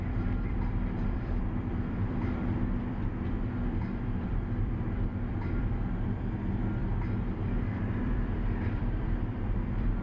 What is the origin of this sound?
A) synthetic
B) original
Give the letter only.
A